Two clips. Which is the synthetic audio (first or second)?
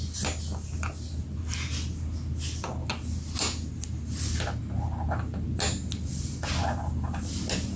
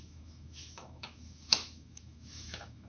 second